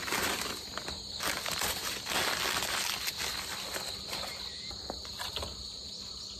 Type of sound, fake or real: real